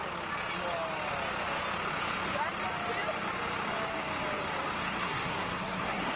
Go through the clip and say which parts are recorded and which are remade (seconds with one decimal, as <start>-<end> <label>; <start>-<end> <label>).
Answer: 0.0-5.0 recorded; 5.0-6.2 remade